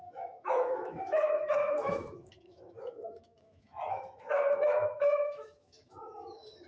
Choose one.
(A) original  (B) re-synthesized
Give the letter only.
B